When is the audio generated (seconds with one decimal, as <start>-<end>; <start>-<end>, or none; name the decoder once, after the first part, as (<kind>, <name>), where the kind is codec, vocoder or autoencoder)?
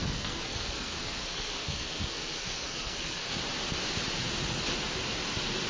0.0-3.4 (codec, SNAC)